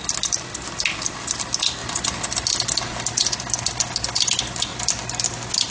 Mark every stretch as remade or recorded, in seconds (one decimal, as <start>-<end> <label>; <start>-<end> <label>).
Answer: 0.0-5.7 recorded